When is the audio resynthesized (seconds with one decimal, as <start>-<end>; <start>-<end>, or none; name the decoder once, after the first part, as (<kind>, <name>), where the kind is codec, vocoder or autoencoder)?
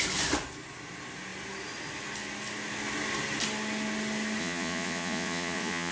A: 4.4-5.9 (vocoder, Vocos)